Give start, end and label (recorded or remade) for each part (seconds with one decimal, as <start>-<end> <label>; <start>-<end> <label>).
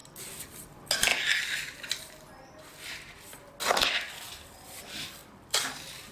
0.0-6.1 recorded